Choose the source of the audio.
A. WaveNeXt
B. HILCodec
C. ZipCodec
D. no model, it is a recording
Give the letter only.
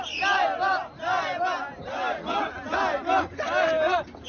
D